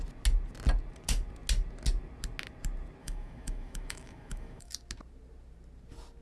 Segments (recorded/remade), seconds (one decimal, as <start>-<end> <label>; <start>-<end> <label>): 0.0-3.0 recorded; 3.0-4.7 remade; 4.7-6.2 recorded